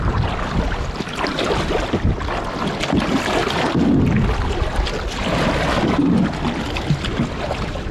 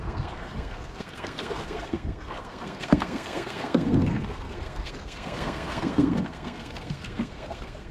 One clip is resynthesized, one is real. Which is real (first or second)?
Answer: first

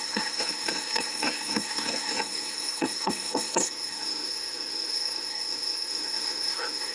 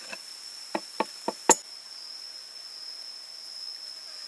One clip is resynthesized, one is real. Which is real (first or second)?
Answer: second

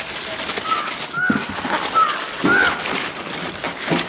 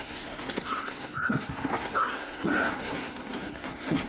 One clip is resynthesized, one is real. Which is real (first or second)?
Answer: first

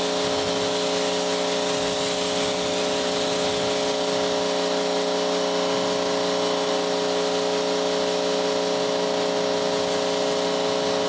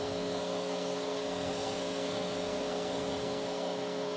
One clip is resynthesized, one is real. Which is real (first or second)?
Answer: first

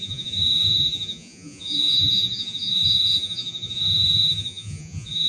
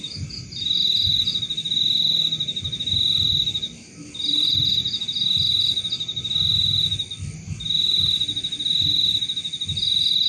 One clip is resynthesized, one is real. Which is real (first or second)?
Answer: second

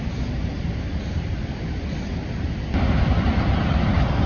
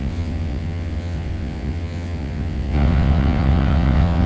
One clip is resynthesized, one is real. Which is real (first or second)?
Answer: first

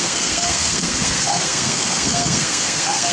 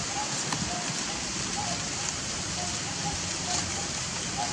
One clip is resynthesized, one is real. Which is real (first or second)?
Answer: second